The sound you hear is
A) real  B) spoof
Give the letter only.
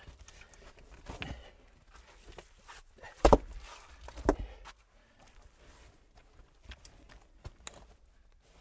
A